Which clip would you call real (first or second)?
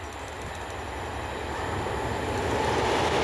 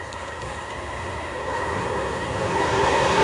first